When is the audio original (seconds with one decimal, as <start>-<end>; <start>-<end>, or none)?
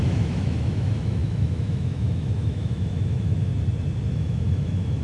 3.5-4.1